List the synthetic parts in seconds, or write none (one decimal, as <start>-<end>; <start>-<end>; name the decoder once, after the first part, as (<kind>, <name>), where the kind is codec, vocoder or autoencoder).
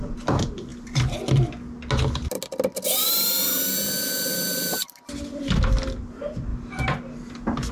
0.0-0.7 (vocoder, BigVGAN v2); 4.0-6.5